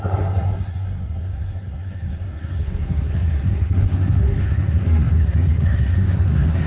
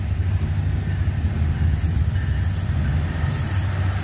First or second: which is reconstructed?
first